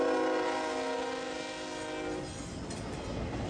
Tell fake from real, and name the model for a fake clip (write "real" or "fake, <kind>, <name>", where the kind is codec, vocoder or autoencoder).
real